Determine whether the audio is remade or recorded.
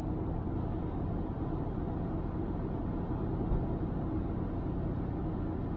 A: recorded